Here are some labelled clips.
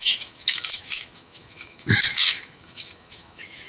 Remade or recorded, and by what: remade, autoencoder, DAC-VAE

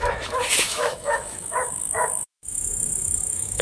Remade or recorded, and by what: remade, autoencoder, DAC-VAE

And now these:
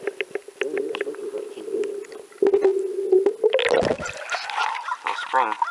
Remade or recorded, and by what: recorded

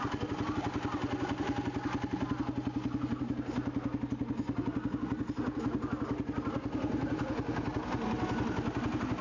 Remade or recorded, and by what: recorded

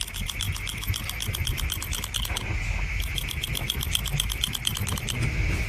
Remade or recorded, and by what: recorded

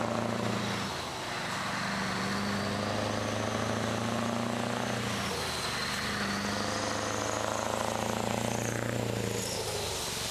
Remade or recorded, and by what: recorded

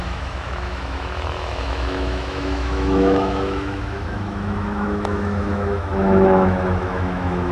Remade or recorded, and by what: remade, autoencoder, DAC-VAE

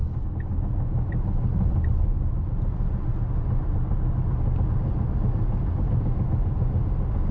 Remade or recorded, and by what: recorded